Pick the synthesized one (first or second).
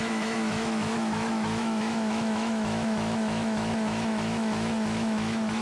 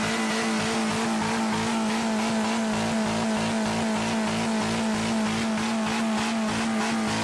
first